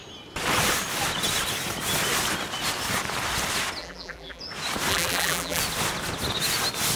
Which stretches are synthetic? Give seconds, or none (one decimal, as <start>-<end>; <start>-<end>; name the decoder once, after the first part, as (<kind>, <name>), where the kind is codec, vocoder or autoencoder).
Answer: 3.8-4.4 (vocoder, BigVGAN v2); 4.9-5.6